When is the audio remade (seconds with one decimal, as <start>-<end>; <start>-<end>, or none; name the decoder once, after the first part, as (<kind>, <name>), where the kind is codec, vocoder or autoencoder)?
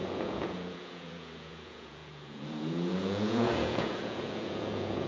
0.0-5.1 (vocoder, Vocos)